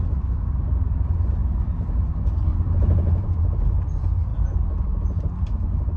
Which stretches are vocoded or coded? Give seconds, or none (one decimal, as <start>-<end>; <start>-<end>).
2.5-3.3; 4.3-5.2